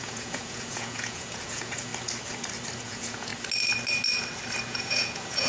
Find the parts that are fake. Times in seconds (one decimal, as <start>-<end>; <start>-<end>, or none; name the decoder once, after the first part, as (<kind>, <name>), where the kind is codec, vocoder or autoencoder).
0.0-1.9 (vocoder, Vocos); 2.8-3.3; 4.7-5.5